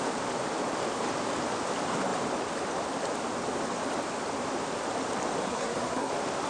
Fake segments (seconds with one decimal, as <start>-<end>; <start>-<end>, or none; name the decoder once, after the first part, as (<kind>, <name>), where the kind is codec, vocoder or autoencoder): 5.5-6.1 (codec, SNAC)